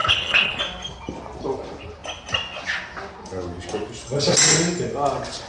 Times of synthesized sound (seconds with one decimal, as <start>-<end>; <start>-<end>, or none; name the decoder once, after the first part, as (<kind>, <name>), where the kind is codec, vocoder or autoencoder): 0.0-0.6 (codec, HILCodec)